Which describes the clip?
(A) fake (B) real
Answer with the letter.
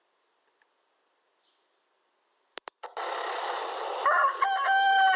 B